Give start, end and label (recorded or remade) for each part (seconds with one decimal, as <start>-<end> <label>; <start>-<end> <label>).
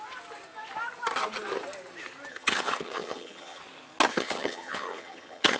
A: 0.0-2.3 recorded; 2.3-3.6 remade; 3.6-4.1 recorded; 4.1-5.6 remade